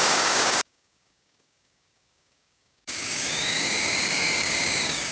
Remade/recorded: remade